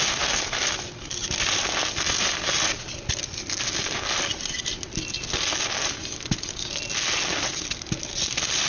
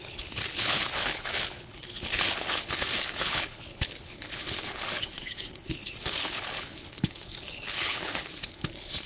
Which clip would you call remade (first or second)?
second